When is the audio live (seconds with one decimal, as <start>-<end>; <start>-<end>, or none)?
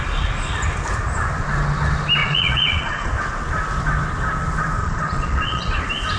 0.0-2.2; 3.1-4.8; 5.8-6.2